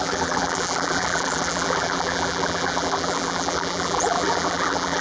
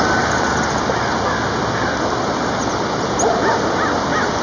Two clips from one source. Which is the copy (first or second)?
first